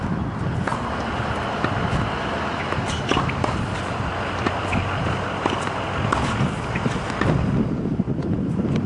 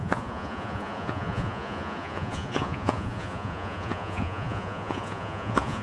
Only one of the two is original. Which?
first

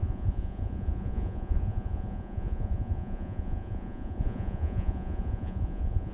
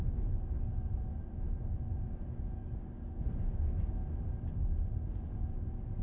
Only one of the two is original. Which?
second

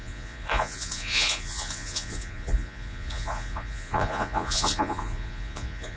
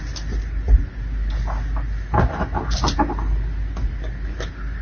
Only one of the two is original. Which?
second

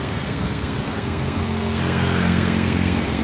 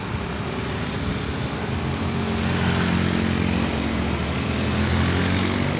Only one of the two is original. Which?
second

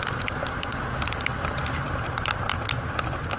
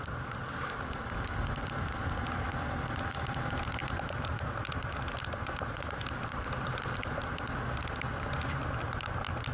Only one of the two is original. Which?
second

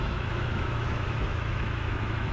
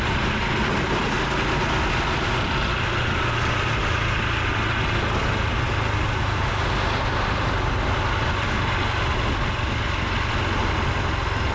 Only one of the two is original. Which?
second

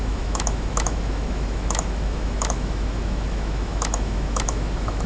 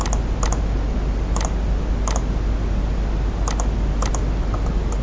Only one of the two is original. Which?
second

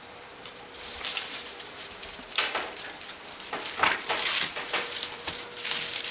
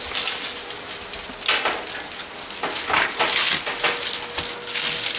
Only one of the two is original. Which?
second